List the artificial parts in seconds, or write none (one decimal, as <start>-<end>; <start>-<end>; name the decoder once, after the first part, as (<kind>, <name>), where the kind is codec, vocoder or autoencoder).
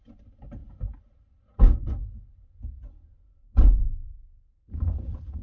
none